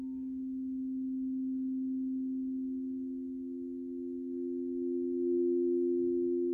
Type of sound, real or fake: real